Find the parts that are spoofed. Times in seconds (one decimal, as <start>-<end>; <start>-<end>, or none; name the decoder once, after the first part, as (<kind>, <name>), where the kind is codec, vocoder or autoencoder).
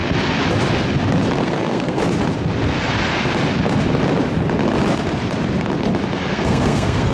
1.4-2.0 (codec, SNAC); 6.3-7.1